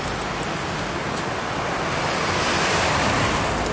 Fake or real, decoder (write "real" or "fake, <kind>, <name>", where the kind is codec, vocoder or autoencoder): real